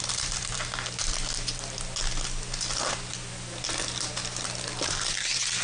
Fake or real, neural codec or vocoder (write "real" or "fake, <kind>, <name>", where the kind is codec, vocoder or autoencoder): real